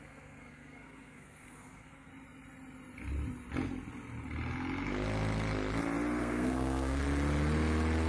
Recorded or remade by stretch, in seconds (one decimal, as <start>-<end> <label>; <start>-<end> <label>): 0.0-2.1 remade; 2.1-6.2 recorded; 6.2-7.0 remade; 7.0-8.1 recorded